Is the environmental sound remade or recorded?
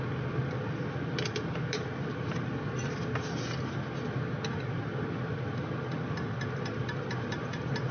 recorded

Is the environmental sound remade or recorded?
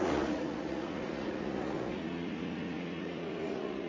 remade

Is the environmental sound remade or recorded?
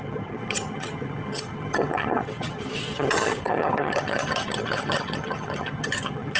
remade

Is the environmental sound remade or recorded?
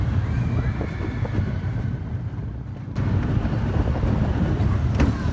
recorded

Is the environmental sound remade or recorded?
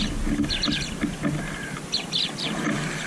recorded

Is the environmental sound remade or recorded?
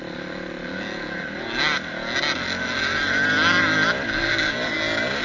recorded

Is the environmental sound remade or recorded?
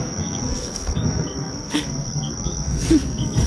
remade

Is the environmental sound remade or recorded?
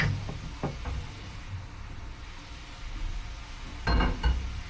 recorded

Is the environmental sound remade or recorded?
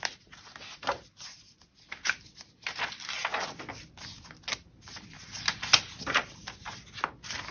recorded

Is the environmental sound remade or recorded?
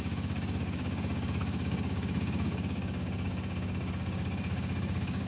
remade